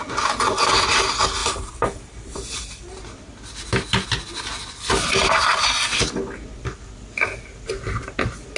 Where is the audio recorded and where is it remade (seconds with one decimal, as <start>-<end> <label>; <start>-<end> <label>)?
0.0-1.4 recorded; 1.4-3.0 remade; 3.0-8.6 recorded